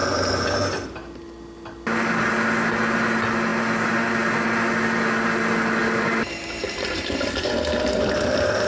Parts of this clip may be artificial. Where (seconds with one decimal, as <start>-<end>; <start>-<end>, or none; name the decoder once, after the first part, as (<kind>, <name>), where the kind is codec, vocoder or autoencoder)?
0.0-1.2 (vocoder, BigVGAN v2); 5.8-8.0